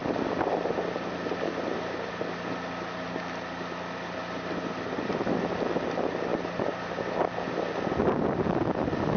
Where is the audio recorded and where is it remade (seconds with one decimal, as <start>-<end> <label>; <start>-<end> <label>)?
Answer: 0.0-9.2 recorded